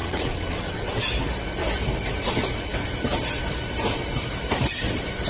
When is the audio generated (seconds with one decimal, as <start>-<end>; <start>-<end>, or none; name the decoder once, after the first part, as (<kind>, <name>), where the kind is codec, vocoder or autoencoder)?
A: 0.0-1.0 (vocoder, WaveNeXt)